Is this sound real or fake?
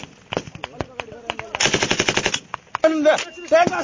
real